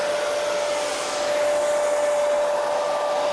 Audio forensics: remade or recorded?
recorded